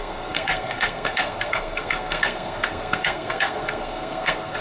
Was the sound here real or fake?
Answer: fake